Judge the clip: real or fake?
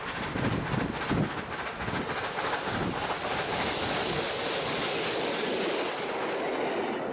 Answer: real